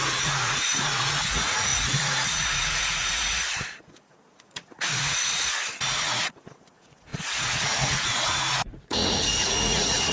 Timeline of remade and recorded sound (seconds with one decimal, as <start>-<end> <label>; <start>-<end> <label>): 0.0-10.1 remade